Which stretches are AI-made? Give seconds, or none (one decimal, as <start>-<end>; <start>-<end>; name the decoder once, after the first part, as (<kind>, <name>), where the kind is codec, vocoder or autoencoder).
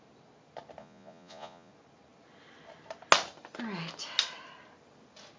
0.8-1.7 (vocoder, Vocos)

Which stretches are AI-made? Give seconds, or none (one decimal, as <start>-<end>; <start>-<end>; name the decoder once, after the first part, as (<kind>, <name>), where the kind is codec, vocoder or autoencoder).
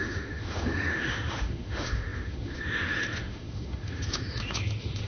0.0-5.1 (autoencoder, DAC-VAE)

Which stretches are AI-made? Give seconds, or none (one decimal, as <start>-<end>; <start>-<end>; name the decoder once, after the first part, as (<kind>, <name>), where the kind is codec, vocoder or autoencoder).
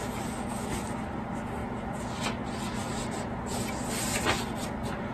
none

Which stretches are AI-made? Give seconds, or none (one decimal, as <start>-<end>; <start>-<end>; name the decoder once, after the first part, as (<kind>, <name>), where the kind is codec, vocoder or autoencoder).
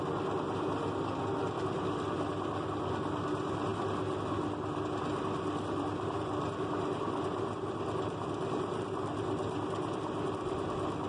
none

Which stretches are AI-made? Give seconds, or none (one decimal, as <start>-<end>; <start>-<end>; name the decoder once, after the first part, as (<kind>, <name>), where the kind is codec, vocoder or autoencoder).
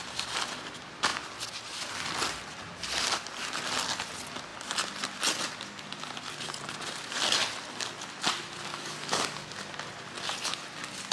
8.7-9.5 (codec, DAC)